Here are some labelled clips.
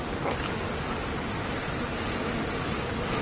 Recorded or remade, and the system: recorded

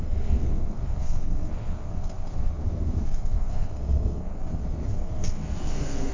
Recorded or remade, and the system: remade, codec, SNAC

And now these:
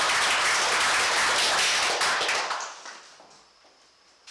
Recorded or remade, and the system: recorded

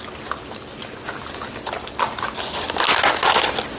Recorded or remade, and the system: recorded